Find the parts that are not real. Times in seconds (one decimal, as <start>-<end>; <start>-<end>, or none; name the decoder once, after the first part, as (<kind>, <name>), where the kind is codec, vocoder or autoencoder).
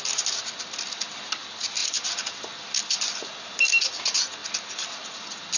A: none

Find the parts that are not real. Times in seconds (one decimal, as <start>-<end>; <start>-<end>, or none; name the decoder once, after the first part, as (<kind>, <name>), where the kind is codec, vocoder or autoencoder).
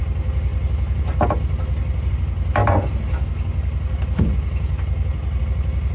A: none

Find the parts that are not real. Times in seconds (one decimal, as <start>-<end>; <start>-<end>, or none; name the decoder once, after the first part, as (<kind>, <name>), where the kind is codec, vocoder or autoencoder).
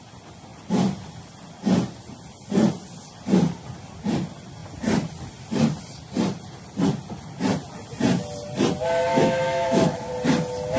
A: 9.1-10.1 (autoencoder, DAC-VAE)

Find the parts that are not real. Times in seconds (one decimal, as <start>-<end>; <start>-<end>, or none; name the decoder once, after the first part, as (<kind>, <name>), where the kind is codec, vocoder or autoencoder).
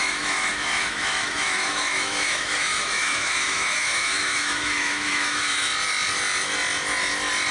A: 0.0-5.7 (autoencoder, DAC-VAE)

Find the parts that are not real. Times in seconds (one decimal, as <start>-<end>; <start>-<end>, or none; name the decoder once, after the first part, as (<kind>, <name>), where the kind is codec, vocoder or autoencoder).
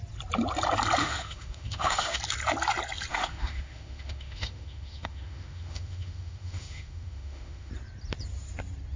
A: 1.0-2.2 (autoencoder, DAC-VAE); 3.1-7.7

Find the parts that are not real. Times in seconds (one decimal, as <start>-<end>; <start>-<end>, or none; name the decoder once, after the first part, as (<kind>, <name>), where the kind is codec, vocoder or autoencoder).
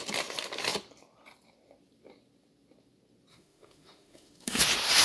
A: 3.3-4.6 (autoencoder, DAC-VAE)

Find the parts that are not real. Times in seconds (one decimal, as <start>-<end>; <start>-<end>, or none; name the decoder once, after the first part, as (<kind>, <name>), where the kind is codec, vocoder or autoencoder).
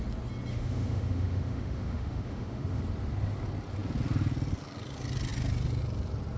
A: 0.5-2.8 (autoencoder, DAC-VAE)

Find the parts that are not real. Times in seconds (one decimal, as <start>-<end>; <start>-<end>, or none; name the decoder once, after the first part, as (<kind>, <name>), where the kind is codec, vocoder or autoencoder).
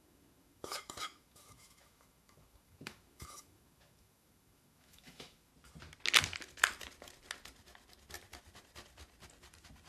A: 0.0-5.5 (autoencoder, DAC-VAE)